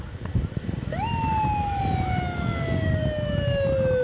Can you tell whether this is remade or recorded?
recorded